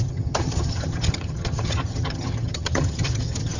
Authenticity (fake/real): fake